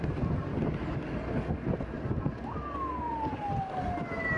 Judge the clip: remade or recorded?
recorded